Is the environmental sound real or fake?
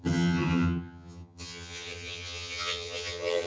fake